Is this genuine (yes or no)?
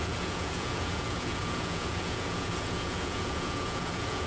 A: no